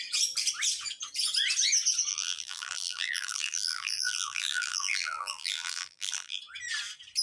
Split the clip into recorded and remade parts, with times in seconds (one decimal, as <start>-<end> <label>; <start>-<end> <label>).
0.0-2.1 recorded; 2.1-6.4 remade; 6.4-7.2 recorded